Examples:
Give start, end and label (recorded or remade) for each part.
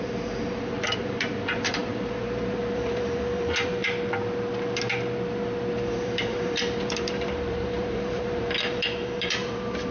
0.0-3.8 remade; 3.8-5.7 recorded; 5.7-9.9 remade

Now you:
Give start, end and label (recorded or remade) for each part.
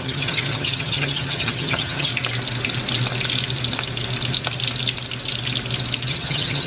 0.0-2.1 remade; 2.1-6.1 recorded; 6.1-6.7 remade